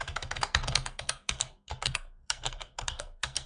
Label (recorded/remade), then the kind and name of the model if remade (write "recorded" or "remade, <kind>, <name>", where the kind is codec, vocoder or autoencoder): remade, codec, SNAC